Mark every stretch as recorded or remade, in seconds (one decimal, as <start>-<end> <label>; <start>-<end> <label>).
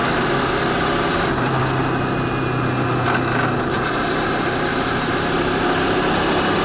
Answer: 0.0-6.6 recorded